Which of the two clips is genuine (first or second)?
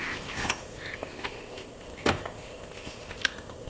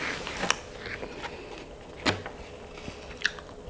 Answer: second